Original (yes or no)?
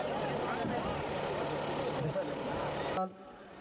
yes